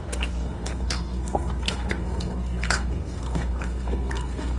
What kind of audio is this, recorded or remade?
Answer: remade